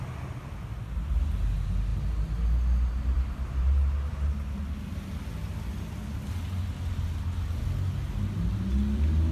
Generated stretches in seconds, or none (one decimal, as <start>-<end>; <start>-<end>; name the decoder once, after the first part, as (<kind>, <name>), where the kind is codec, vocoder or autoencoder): 2.9-4.1 (vocoder, BigVGAN v2)